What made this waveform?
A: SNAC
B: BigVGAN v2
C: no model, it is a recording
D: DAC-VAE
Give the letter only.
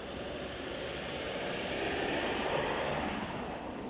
B